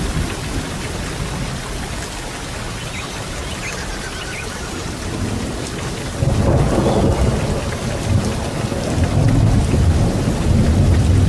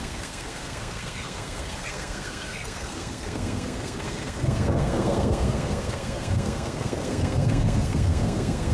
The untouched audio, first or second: first